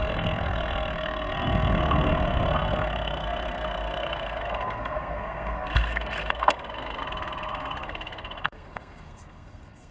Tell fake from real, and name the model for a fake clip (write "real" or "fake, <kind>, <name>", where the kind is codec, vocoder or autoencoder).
fake, codec, SNAC